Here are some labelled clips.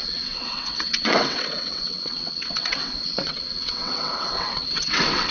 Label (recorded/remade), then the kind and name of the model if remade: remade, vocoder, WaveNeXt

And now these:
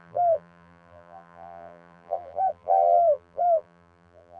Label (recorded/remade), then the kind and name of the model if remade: remade, vocoder, BigVGAN v2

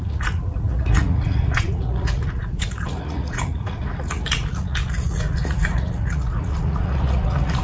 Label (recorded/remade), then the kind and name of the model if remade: remade, vocoder, Vocos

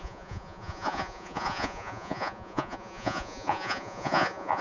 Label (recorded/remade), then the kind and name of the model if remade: remade, vocoder, Vocos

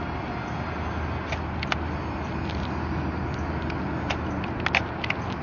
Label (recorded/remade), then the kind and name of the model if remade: recorded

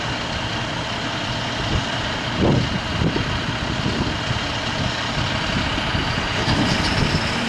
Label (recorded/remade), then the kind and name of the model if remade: remade, vocoder, BigVGAN v2